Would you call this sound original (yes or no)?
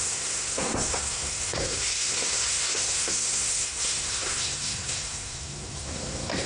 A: no